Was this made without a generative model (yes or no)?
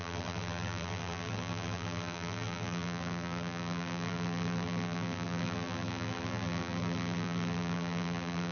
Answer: no